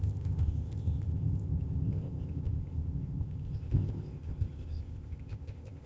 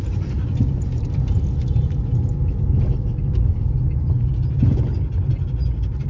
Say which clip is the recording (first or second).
second